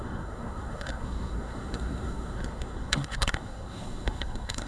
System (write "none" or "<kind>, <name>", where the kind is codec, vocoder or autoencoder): codec, SNAC